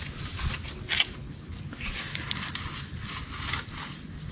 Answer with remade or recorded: recorded